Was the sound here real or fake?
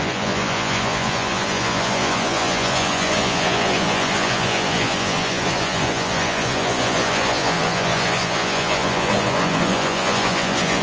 fake